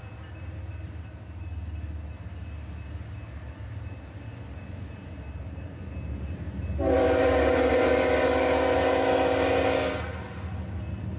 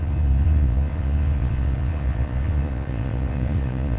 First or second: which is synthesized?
second